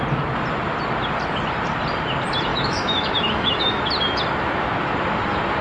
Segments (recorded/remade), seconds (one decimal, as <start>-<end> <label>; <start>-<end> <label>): 0.0-2.5 recorded; 2.5-3.8 remade; 3.8-5.6 recorded

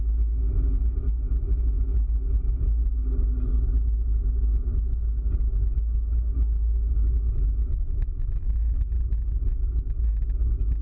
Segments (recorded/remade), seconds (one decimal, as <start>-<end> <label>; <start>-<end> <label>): 0.0-10.8 recorded

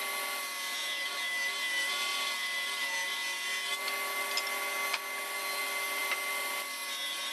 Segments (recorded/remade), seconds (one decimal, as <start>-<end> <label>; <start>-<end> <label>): 0.0-7.3 recorded

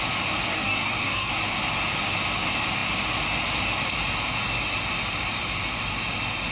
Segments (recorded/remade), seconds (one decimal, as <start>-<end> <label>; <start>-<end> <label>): 0.0-0.5 recorded; 0.5-1.3 remade; 1.3-6.5 recorded

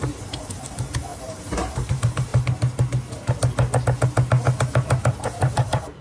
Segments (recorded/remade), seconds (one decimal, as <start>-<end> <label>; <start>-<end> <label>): 0.0-2.3 remade; 2.3-5.2 recorded; 5.2-6.0 remade

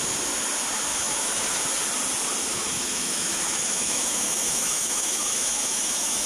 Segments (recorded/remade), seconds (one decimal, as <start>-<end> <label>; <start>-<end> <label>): 0.0-0.9 recorded; 0.9-1.6 remade; 1.6-2.5 recorded; 2.5-6.3 remade

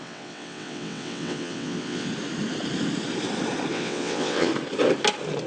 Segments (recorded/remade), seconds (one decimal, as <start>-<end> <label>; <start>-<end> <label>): 0.0-2.1 remade; 2.1-3.7 recorded; 3.7-4.5 remade; 4.5-5.5 recorded